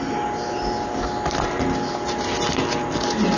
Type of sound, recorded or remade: recorded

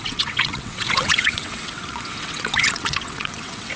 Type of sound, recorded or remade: remade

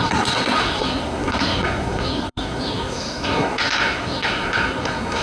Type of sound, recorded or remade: remade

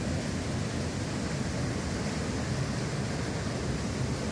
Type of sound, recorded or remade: recorded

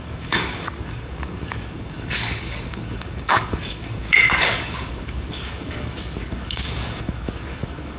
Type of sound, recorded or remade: remade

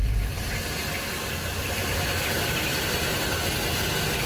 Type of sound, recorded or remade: recorded